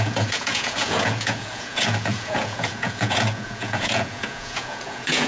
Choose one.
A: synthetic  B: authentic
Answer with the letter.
A